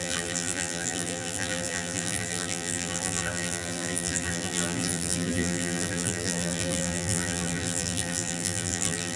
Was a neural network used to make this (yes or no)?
yes